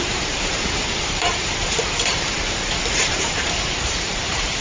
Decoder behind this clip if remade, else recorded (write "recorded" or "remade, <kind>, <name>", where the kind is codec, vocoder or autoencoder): remade, vocoder, BigVGAN v2